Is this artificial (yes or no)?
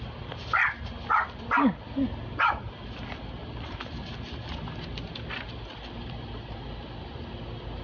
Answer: no